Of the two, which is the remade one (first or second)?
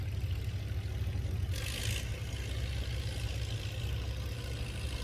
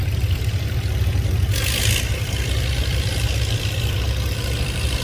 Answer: second